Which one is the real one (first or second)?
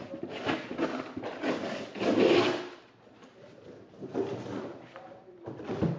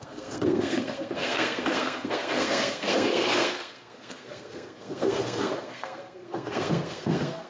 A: first